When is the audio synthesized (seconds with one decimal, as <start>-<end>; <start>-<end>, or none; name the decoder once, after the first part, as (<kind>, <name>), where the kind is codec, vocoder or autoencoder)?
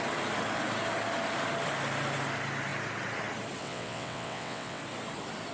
3.6-4.8 (vocoder, WaveNeXt)